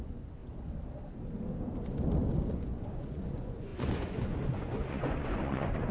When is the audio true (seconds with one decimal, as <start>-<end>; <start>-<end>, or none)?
0.4-2.5